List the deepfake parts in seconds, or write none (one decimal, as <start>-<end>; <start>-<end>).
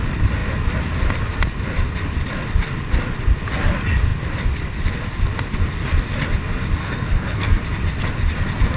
6.8-7.6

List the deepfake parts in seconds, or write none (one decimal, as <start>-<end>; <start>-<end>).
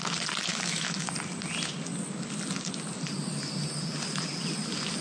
0.5-1.1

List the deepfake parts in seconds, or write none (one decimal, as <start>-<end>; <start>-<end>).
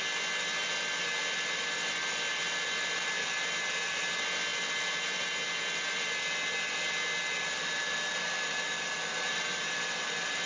none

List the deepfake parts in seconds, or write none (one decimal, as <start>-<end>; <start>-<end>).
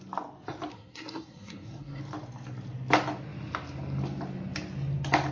0.7-2.0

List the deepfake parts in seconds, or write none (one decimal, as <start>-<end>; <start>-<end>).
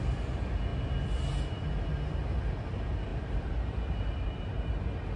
3.1-4.8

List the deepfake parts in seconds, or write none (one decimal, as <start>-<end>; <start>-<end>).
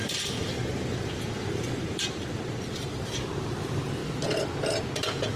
0.0-3.2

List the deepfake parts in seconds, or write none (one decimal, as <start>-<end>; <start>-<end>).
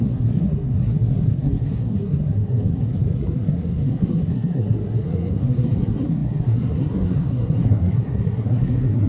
0.0-9.1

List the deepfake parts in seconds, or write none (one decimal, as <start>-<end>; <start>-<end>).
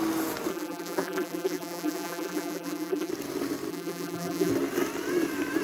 0.5-3.1; 3.7-4.5